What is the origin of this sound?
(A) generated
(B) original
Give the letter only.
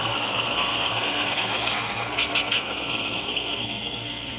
A